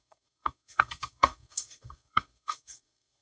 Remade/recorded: remade